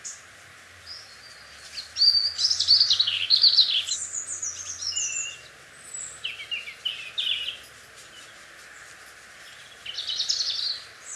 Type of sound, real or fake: real